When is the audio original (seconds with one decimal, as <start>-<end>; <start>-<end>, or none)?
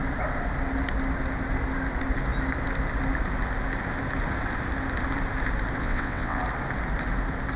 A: 0.0-5.8; 6.4-7.6